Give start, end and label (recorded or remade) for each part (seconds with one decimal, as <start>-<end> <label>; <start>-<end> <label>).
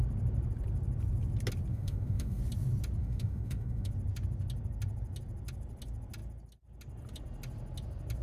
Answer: 0.0-1.7 recorded; 1.7-2.4 remade; 2.4-3.0 recorded; 3.0-3.9 remade; 3.9-8.2 recorded